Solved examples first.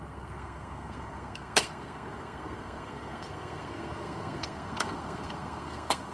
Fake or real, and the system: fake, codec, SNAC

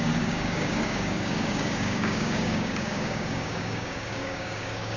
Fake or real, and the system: fake, codec, DAC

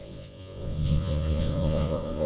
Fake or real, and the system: fake, vocoder, Vocos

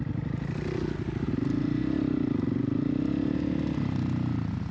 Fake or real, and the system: real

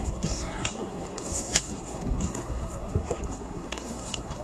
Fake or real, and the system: fake, codec, SNAC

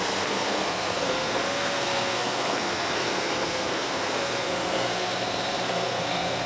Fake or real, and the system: fake, codec, SNAC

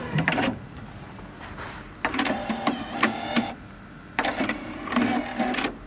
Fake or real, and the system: fake, vocoder, BigVGAN v2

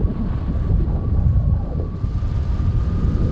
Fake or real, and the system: real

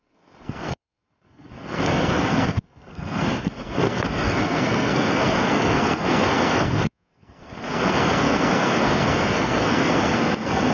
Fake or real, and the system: fake, codec, SNAC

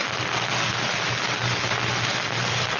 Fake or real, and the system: real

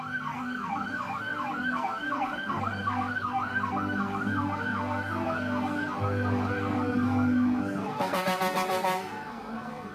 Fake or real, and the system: fake, codec, SNAC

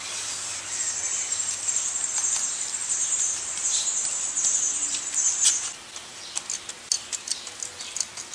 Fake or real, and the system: real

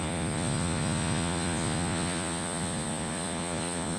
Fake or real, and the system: fake, vocoder, Vocos